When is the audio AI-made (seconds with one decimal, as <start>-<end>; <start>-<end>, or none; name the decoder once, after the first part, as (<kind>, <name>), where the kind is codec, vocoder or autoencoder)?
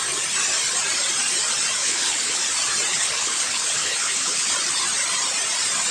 1.8-2.4 (codec, HILCodec); 2.9-4.5